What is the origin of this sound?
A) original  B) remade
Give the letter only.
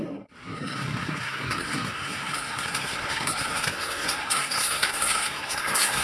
B